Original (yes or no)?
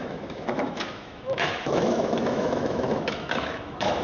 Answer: no